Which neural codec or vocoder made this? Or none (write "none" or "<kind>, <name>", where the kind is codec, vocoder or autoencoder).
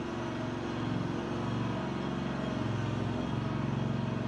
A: none